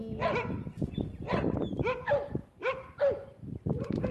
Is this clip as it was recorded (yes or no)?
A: yes